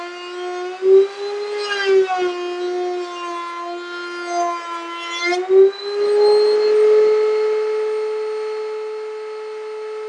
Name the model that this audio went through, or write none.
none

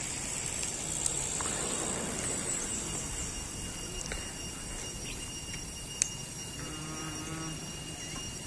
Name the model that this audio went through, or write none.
none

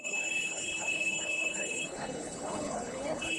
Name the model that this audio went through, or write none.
codec, HILCodec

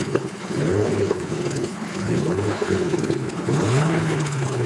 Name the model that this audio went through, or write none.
codec, HILCodec